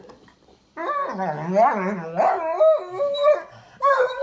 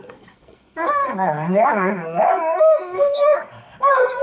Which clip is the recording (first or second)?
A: first